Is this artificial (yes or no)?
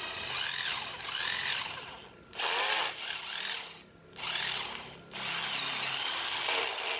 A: no